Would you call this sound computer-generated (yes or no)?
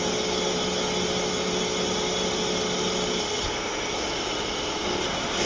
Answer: no